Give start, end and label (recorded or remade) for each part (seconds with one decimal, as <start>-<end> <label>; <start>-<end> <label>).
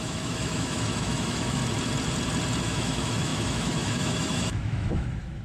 0.0-1.6 remade; 1.6-2.6 recorded; 2.6-5.4 remade